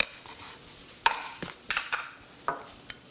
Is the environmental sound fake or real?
real